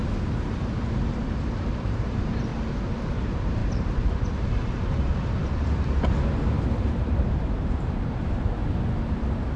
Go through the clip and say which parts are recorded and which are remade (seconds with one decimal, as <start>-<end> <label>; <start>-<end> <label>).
0.0-2.5 remade; 2.5-3.1 recorded; 3.1-5.4 remade; 5.4-6.8 recorded; 6.8-8.6 remade; 8.6-9.6 recorded